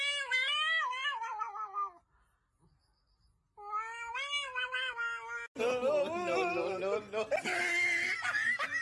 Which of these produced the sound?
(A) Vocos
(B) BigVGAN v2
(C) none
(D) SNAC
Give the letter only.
C